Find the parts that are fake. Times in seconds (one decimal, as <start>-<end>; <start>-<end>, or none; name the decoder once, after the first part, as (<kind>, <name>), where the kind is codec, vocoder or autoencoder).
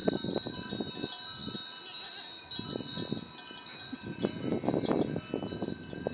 none